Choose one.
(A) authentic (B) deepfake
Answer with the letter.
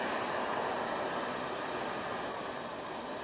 A